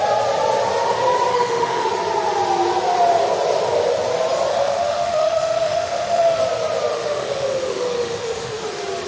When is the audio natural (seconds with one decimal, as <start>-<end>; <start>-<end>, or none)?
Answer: 0.0-1.3; 1.9-4.5; 6.4-6.9; 8.6-9.1